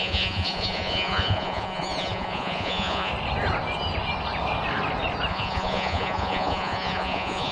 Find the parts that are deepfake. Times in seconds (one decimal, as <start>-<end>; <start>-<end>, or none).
0.0-3.1; 5.3-7.5